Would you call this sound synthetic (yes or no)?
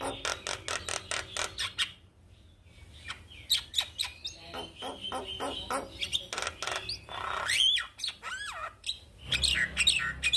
no